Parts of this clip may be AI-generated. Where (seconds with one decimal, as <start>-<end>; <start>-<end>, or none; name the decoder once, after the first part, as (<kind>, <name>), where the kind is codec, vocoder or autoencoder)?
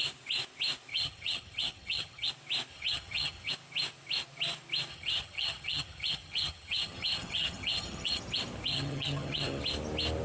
0.9-2.3 (vocoder, HiFi-GAN); 2.7-3.5; 4.9-8.2; 8.7-9.6